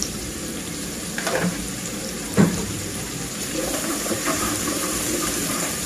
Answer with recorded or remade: remade